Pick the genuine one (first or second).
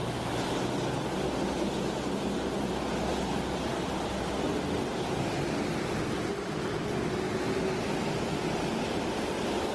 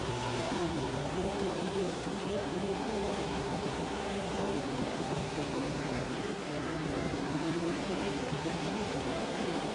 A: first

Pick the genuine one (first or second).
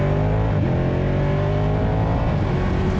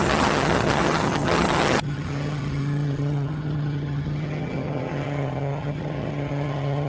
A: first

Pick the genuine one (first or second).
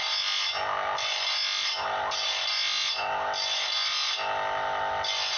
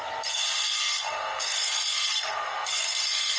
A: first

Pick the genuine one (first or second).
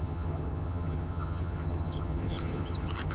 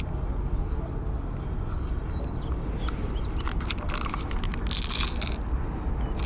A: second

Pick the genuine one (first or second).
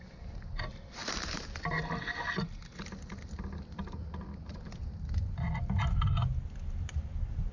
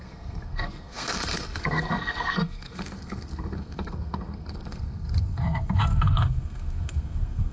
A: first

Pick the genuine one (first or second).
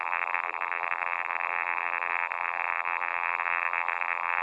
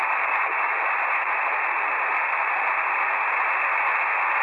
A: second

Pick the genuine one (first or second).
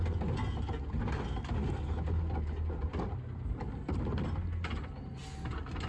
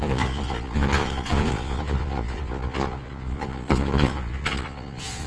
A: first